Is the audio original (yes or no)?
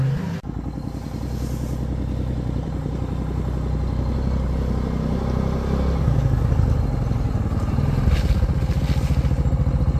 yes